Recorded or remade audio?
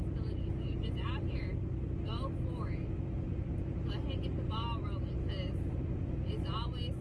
recorded